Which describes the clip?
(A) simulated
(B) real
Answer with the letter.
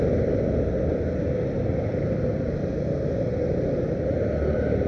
B